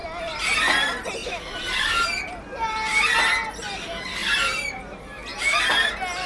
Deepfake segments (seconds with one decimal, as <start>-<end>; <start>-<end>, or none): 0.0-0.6